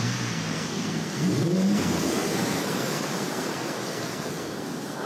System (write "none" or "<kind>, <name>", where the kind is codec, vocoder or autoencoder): codec, SNAC